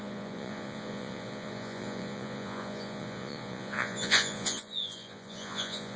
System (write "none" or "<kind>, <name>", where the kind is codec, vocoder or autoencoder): vocoder, Vocos